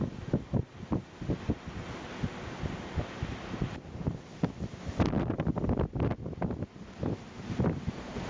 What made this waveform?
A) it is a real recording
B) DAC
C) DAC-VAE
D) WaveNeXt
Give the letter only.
A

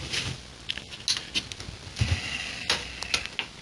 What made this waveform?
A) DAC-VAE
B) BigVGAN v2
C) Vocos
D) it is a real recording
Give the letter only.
D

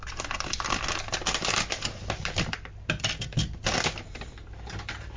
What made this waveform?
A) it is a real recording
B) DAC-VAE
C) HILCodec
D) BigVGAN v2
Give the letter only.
A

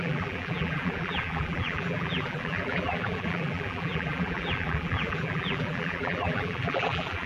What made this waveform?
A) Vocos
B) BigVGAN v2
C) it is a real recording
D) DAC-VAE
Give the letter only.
B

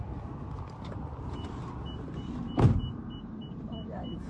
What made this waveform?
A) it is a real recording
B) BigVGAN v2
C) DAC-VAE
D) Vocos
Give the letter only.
A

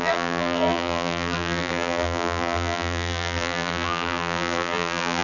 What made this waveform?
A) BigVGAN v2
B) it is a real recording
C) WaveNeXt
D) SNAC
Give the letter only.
A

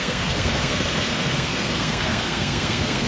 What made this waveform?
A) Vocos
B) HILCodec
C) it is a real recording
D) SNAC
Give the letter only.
D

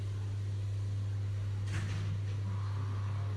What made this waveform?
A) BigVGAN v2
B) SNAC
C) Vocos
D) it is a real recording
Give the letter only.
D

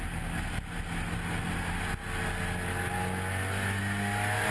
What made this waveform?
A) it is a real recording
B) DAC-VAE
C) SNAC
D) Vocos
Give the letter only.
A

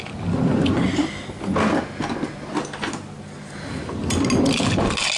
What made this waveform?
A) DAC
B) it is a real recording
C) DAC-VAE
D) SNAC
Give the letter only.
B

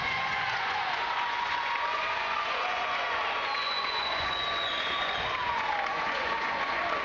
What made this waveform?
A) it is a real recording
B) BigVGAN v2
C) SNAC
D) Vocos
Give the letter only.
D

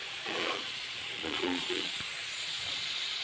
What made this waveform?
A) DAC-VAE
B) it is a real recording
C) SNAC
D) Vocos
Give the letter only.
D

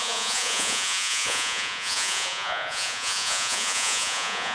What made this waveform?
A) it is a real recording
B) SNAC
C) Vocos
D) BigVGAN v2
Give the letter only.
C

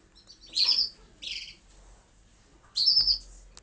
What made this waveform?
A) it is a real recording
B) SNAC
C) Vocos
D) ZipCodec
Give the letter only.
A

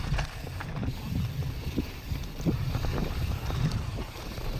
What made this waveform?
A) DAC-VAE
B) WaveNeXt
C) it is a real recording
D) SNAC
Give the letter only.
C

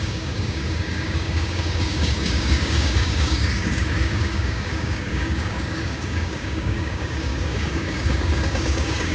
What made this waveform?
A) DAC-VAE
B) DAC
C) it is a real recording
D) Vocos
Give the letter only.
B